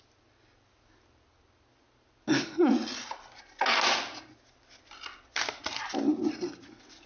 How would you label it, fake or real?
real